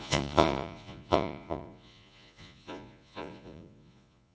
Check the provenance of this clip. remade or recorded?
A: remade